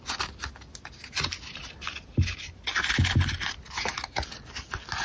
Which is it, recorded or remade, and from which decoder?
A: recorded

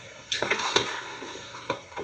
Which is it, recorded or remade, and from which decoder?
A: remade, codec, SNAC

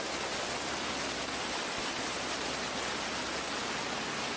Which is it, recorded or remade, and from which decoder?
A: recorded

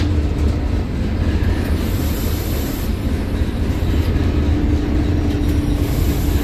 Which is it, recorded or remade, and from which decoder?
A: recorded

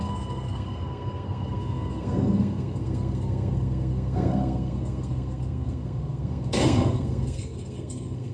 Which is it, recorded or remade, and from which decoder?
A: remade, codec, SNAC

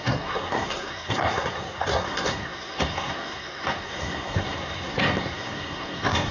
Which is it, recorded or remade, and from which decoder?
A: remade, codec, SNAC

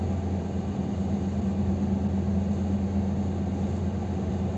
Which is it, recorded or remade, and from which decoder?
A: recorded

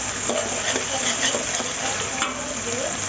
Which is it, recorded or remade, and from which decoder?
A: recorded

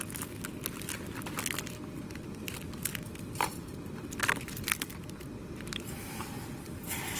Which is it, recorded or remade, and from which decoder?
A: recorded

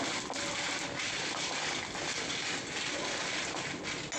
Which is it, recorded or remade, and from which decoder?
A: recorded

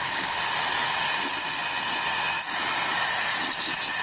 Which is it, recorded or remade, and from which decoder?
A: recorded